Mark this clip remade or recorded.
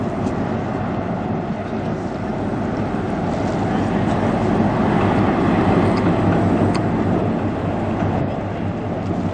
recorded